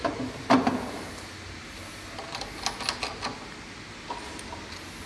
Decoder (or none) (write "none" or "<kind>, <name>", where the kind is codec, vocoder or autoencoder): none